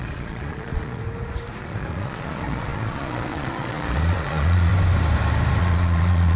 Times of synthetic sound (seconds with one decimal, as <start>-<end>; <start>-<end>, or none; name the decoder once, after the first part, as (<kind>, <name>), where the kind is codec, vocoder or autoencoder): 0.0-1.0 (vocoder, Vocos); 1.6-4.7; 5.6-6.4